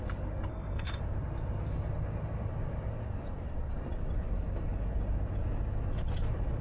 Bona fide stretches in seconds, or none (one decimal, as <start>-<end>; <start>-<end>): 0.0-0.5; 1.0-6.6